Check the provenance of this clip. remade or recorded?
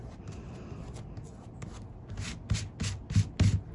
recorded